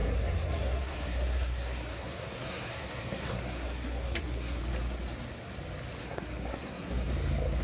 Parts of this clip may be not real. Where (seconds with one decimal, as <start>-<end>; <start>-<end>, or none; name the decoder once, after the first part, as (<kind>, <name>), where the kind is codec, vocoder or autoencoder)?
0.0-4.6 (codec, SNAC); 6.0-7.1